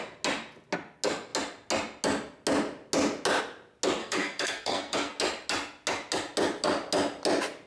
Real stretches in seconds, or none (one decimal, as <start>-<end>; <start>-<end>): 0.0-4.0; 5.2-7.7